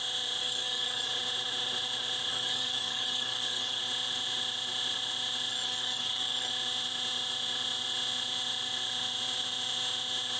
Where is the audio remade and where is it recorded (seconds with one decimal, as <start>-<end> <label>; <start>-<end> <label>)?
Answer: 0.0-0.4 recorded; 0.4-1.1 remade; 1.1-2.3 recorded; 2.3-3.8 remade; 3.8-5.5 recorded; 5.5-6.5 remade; 6.5-10.4 recorded